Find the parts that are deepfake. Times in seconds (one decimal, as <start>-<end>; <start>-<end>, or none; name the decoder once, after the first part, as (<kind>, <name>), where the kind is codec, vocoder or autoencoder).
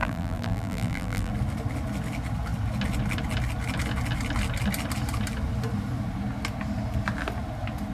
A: 0.0-1.3 (vocoder, BigVGAN v2)